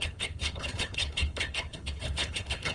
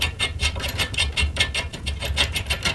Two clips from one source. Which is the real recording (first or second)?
second